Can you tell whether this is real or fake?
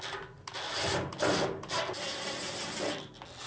real